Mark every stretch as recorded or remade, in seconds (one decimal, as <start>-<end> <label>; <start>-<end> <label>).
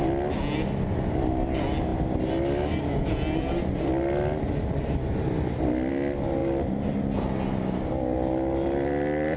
0.0-9.4 recorded